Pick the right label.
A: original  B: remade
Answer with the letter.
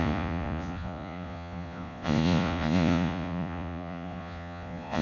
B